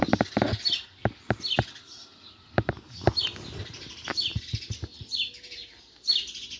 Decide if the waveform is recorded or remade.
recorded